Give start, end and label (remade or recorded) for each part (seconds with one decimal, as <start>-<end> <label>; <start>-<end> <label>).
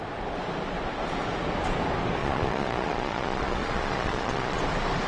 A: 0.0-2.2 recorded; 2.2-4.6 remade; 4.6-5.1 recorded